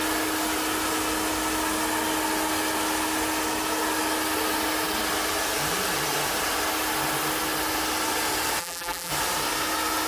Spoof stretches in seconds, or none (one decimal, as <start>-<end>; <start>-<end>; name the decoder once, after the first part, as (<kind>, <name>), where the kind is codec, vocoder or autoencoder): 8.6-9.1 (vocoder, BigVGAN v2)